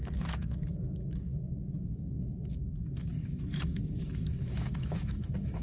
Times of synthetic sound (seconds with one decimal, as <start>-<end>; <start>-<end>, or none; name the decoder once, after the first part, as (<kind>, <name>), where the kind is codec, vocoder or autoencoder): 0.0-5.6 (autoencoder, DAC-VAE)